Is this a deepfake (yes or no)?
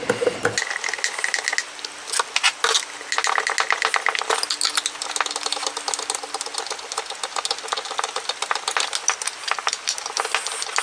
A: no